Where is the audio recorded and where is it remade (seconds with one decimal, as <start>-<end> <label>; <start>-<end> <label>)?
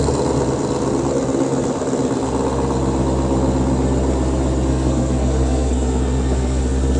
0.0-4.7 recorded; 4.7-6.6 remade; 6.6-7.0 recorded